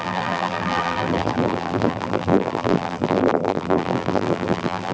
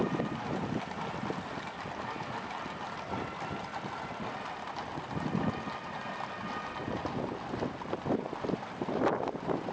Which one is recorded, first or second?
second